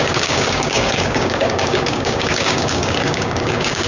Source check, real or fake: fake